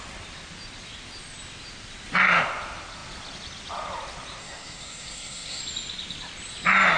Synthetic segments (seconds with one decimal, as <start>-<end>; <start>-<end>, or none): 4.4-5.6